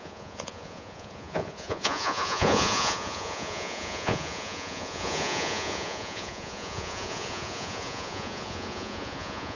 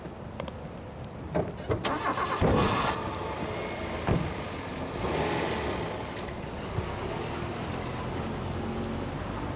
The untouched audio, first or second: second